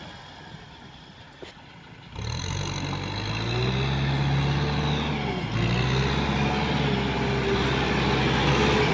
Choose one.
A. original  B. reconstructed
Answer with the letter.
A